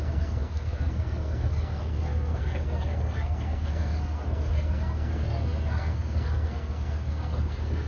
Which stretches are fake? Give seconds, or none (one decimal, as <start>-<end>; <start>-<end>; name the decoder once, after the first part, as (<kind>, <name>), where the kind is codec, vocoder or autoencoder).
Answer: 0.0-7.9 (codec, SNAC)